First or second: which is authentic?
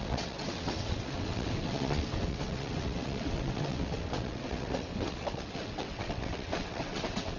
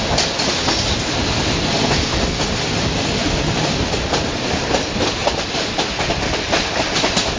second